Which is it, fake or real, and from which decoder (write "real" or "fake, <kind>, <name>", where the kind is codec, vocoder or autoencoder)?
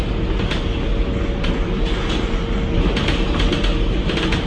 real